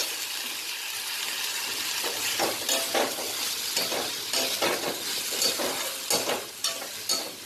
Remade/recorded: recorded